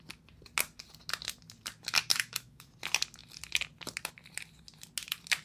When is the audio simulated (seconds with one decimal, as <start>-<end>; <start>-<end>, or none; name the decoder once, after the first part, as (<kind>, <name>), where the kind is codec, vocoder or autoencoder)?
2.1-2.7 (autoencoder, DAC-VAE)